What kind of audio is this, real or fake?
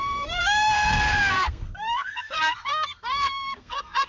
fake